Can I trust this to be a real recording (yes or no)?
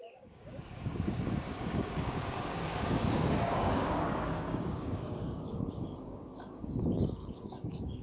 no